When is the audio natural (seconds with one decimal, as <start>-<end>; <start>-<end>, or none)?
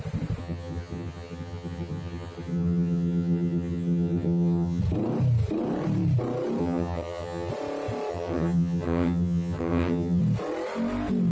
0.0-0.4; 4.8-6.6; 7.5-8.1; 10.2-11.3